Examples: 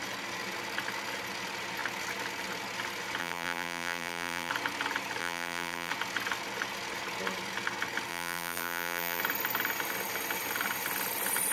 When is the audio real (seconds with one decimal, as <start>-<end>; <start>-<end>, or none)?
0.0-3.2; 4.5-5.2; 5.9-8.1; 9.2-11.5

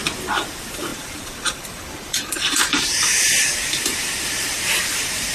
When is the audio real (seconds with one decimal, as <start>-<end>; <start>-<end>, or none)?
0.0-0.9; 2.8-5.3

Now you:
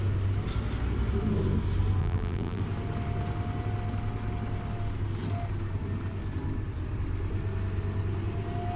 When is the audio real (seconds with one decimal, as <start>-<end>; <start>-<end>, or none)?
0.0-2.0; 2.6-8.8

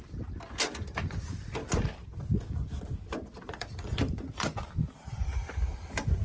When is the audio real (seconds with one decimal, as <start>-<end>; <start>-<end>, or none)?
0.0-1.6; 5.3-6.2

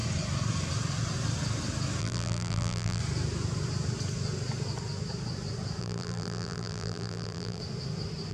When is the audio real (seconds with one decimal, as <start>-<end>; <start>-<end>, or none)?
0.0-2.0; 3.0-5.8; 7.6-8.3

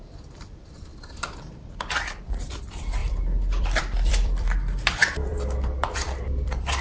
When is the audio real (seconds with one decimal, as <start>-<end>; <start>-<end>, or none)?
0.9-1.5; 5.3-6.3